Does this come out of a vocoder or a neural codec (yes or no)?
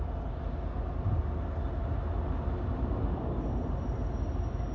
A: no